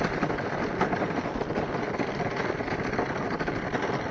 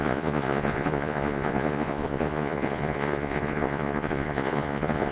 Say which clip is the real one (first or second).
first